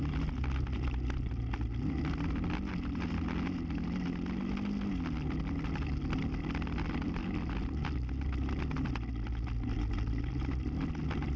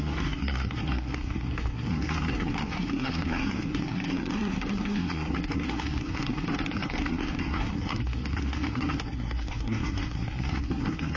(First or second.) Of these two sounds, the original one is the first